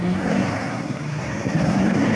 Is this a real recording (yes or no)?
no